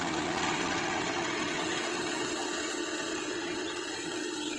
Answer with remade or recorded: remade